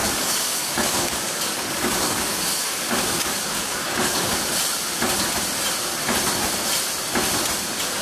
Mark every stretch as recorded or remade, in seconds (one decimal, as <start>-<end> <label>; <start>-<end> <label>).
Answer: 0.0-4.4 remade; 4.4-8.0 recorded